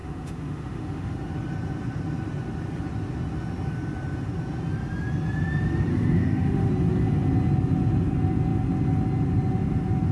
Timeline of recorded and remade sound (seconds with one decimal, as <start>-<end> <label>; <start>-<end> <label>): 0.0-1.1 remade; 1.1-5.9 recorded; 5.9-6.7 remade; 6.7-10.1 recorded